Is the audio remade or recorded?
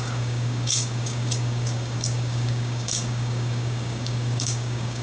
remade